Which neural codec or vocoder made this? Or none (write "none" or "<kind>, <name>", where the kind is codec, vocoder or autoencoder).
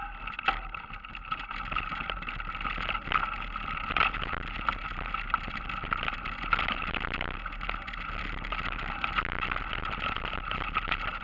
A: none